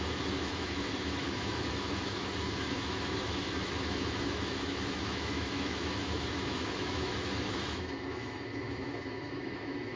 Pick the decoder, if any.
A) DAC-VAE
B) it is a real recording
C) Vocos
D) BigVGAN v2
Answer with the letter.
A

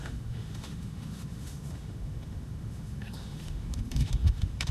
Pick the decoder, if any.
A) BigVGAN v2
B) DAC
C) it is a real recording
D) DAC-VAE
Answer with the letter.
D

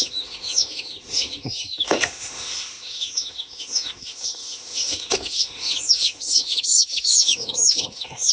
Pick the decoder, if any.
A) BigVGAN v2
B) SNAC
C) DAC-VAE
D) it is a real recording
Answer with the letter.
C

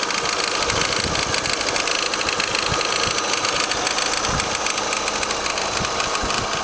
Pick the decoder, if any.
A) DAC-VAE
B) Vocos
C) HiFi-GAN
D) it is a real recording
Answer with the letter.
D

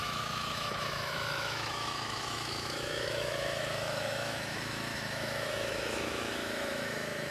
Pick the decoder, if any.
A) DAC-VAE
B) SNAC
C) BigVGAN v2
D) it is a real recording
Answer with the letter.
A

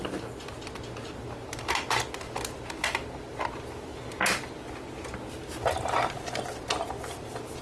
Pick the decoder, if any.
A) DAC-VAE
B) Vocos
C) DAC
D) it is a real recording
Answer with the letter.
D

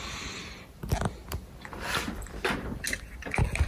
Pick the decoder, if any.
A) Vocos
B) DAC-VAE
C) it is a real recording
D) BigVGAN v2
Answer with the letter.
C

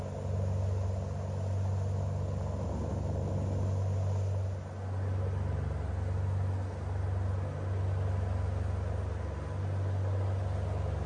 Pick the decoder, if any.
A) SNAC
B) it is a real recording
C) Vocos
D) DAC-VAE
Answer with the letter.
B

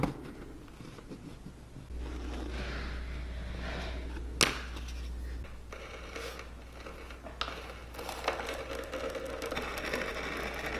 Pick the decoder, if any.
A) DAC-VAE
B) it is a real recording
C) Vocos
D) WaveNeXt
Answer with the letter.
B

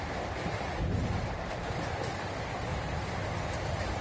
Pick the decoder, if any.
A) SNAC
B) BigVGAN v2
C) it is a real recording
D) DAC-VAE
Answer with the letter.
C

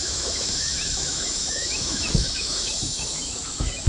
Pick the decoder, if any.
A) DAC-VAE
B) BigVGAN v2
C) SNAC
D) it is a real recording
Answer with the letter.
A